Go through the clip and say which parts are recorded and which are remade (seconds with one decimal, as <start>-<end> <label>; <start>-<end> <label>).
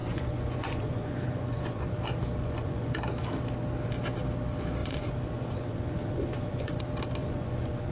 0.0-1.9 remade; 1.9-2.4 recorded; 2.4-2.9 remade; 2.9-4.8 recorded; 4.8-6.8 remade; 6.8-7.2 recorded; 7.2-7.9 remade